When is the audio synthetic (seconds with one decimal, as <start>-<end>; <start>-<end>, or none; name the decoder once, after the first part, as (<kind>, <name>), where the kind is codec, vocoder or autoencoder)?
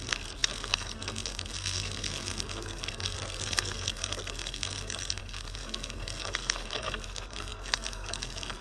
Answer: 0.0-8.6 (codec, SNAC)